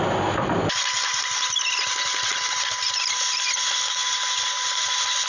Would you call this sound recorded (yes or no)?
yes